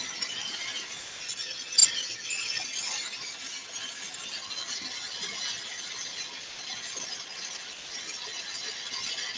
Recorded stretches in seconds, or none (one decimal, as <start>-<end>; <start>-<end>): 0.0-0.4; 1.1-9.4